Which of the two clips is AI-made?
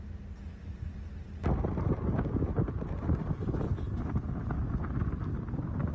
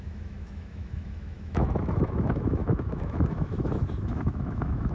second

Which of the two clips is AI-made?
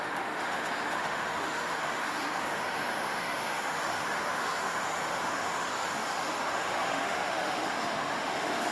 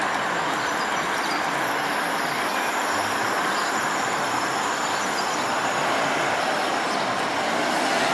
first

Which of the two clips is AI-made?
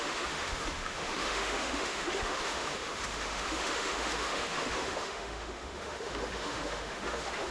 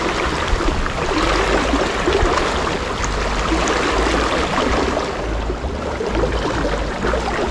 first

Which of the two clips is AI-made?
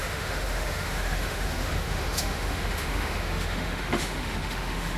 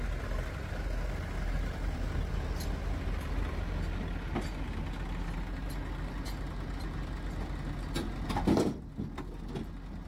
first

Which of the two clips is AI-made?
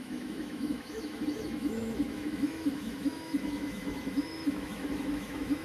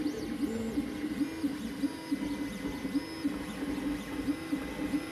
first